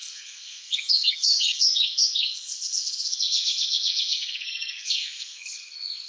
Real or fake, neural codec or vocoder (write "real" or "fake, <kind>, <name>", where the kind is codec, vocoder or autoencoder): fake, codec, SNAC